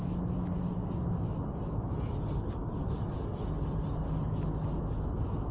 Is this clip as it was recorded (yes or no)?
yes